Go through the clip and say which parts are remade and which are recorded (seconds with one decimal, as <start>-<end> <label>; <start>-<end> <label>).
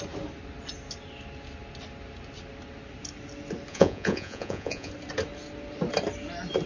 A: 0.0-3.7 recorded; 3.7-4.9 remade; 4.9-6.7 recorded